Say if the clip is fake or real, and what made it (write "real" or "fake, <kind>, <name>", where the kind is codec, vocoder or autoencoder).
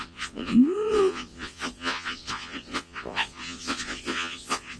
fake, vocoder, Vocos